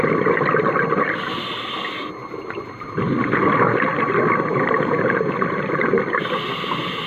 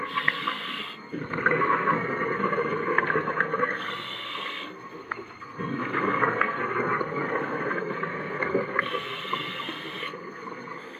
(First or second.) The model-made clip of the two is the second